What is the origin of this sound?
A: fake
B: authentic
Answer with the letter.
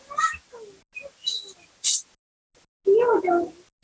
B